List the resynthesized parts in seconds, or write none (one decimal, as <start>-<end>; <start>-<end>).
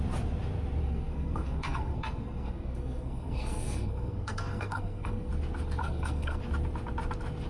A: 0.8-5.3; 5.8-6.4